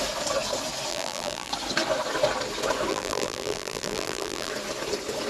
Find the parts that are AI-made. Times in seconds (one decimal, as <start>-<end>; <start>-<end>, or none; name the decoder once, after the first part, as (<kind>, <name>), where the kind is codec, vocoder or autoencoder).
0.9-1.5 (vocoder, BigVGAN v2); 2.9-4.5